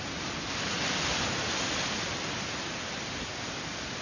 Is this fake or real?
real